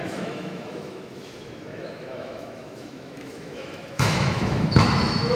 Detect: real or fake fake